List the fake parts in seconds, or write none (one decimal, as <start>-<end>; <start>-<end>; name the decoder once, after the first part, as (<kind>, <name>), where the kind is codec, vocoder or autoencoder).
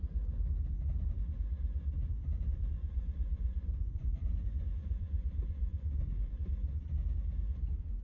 2.8-6.3 (vocoder, Vocos)